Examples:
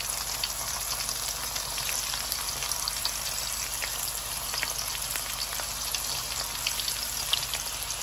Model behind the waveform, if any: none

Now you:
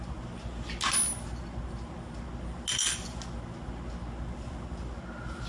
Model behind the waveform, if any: none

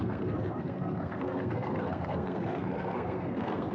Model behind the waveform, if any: codec, SNAC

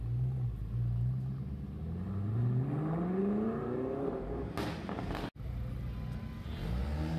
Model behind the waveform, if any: none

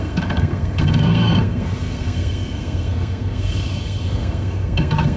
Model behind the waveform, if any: codec, SNAC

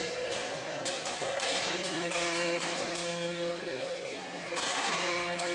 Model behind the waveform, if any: codec, SNAC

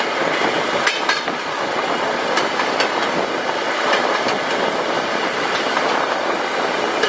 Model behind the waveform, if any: none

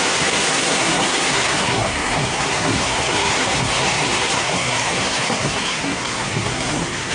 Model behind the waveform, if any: codec, SNAC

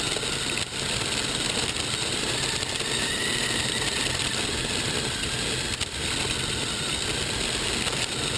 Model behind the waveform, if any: none